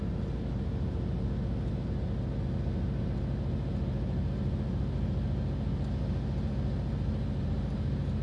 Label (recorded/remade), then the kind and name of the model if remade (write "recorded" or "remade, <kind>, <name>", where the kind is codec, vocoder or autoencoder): recorded